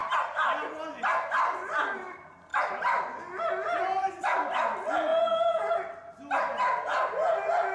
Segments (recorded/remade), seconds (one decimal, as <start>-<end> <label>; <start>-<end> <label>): 0.0-5.1 recorded; 5.1-5.7 remade; 5.7-7.7 recorded

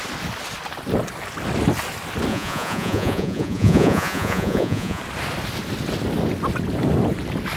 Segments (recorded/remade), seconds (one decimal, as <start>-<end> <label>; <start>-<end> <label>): 0.0-2.3 recorded; 2.3-5.0 remade; 5.0-7.6 recorded

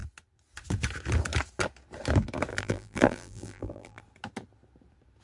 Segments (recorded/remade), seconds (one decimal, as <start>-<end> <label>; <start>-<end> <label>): 0.0-2.5 recorded; 2.5-4.0 remade; 4.0-5.2 recorded

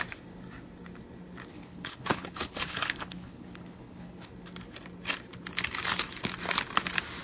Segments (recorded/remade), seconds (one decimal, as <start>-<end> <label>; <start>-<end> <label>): 0.0-1.5 recorded; 1.5-4.3 remade; 4.3-7.2 recorded

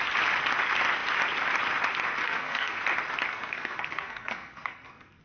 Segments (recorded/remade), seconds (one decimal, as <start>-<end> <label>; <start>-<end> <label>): 0.0-2.2 recorded; 2.2-2.8 remade; 2.8-3.3 recorded; 3.3-5.2 remade

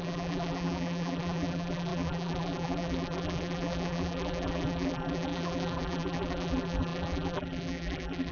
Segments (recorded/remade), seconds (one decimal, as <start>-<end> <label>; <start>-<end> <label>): 0.0-8.3 remade

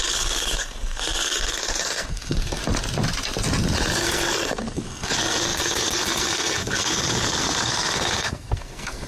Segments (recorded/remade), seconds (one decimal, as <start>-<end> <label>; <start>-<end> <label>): 0.0-2.6 remade; 2.6-3.9 recorded; 3.9-9.1 remade

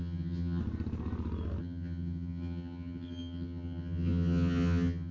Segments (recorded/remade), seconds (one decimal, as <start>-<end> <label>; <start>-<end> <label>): 0.0-0.6 remade; 0.6-1.6 recorded; 1.6-5.1 remade